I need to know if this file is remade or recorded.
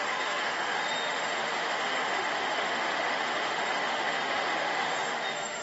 remade